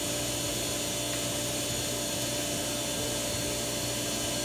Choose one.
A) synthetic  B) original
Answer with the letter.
B